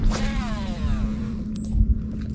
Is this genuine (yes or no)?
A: no